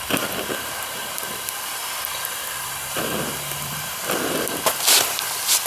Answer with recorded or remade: remade